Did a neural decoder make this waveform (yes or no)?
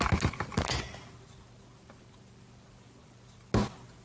no